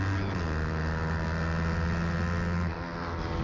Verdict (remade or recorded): recorded